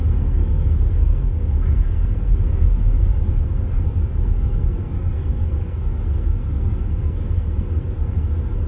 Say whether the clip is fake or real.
fake